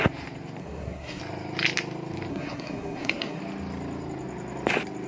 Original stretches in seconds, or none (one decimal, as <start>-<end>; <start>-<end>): 0.0-0.6; 1.2-2.3; 3.4-5.1